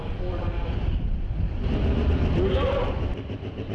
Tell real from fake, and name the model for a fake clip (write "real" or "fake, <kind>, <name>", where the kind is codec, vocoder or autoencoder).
real